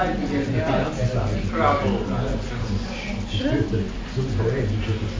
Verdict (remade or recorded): recorded